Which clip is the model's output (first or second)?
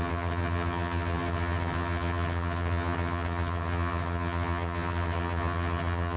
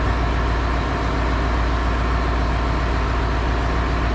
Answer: first